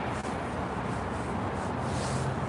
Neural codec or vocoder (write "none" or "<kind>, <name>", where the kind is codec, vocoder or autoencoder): none